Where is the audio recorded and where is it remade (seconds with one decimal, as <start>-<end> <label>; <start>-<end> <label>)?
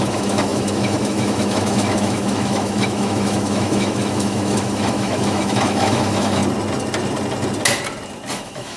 0.0-6.4 remade; 6.4-8.3 recorded; 8.3-8.8 remade